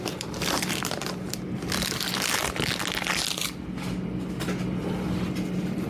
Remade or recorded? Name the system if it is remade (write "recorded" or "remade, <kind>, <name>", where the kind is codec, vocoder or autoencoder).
recorded